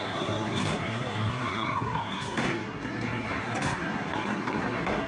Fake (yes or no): yes